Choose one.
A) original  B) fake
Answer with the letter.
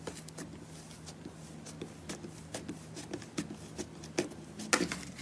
A